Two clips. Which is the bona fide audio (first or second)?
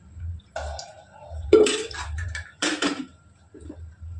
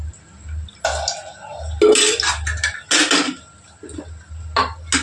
second